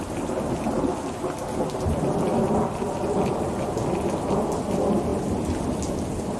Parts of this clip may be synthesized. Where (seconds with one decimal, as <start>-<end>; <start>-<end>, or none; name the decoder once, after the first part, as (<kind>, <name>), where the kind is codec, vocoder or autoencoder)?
5.1-5.9 (vocoder, BigVGAN v2)